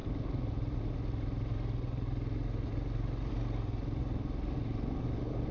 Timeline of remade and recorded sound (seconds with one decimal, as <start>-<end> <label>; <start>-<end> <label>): 0.0-5.5 recorded